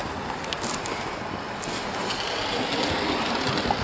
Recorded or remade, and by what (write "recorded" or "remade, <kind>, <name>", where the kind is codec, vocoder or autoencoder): recorded